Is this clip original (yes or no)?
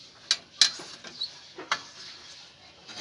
yes